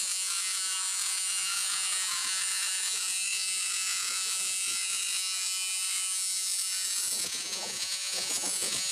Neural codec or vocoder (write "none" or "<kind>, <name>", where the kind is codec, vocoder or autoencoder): vocoder, Vocos